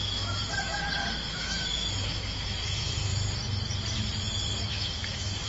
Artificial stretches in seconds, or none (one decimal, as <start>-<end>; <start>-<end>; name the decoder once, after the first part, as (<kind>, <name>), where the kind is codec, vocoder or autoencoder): 0.0-0.4 (autoencoder, DAC-VAE); 1.3-3.1; 4.7-5.5